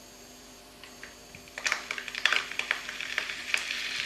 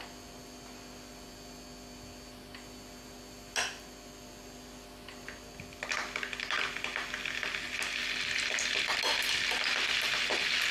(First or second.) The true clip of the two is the second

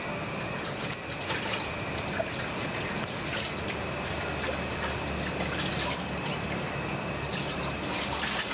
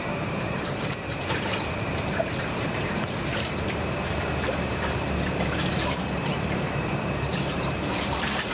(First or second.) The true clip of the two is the first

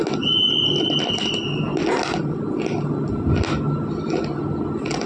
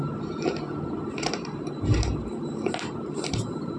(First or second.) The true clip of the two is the first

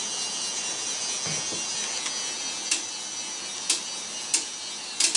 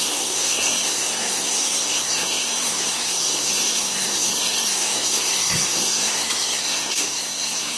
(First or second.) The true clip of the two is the first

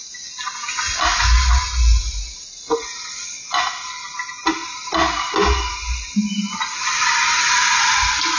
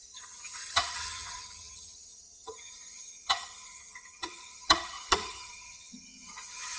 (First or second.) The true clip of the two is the first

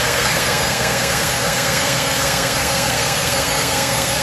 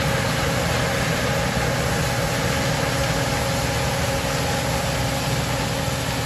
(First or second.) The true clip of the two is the second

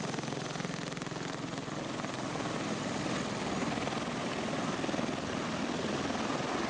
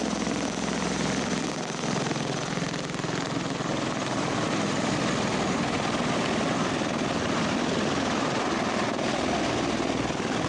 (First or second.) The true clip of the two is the first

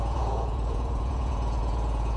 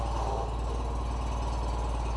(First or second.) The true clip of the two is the second